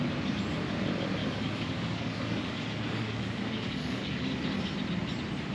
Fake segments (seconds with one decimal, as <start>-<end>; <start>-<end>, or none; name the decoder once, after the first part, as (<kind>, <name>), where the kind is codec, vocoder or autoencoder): 1.2-4.3 (codec, DAC)